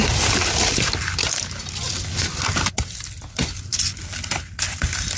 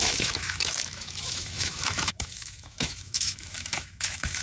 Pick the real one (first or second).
first